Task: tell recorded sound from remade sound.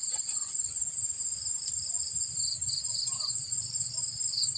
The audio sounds recorded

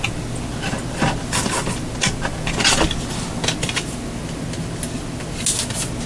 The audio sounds recorded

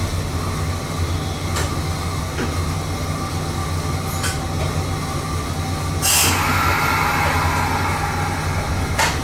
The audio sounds recorded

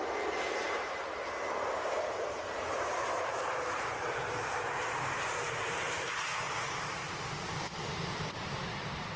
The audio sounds remade